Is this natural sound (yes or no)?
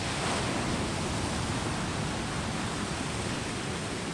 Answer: yes